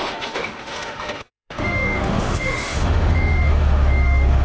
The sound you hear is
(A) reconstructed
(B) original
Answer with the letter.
A